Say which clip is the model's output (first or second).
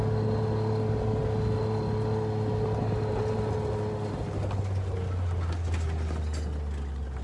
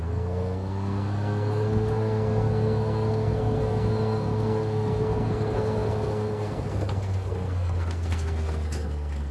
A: second